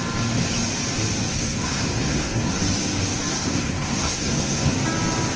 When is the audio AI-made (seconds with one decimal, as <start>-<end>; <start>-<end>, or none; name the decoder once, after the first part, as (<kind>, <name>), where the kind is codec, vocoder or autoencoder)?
1.3-2.5 (codec, SNAC); 3.3-4.7